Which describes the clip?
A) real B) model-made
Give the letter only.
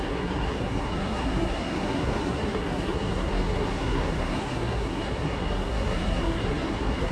B